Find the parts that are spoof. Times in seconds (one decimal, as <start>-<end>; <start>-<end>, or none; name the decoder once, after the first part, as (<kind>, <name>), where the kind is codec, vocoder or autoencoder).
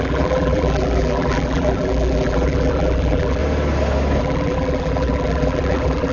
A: 0.0-3.4 (vocoder, BigVGAN v2); 4.2-6.1